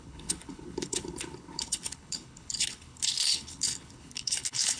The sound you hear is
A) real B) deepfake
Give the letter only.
B